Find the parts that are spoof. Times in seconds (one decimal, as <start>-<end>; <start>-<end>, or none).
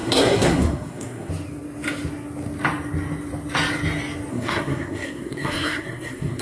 0.0-1.3; 4.3-6.4